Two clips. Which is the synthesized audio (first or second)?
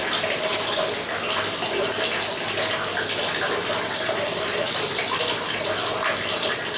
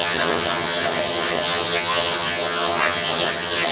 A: second